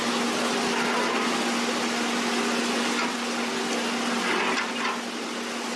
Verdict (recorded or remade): recorded